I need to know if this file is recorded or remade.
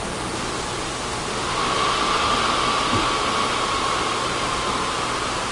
recorded